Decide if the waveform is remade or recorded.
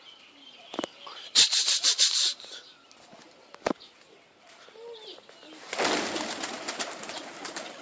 recorded